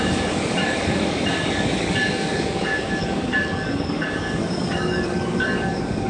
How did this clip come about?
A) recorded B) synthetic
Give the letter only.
B